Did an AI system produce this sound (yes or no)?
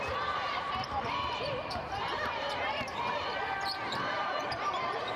yes